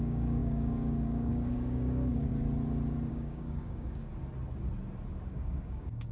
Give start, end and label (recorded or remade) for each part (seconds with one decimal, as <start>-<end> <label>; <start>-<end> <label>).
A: 0.0-2.3 remade; 2.3-3.1 recorded; 3.1-4.1 remade; 4.1-5.3 recorded; 5.3-6.1 remade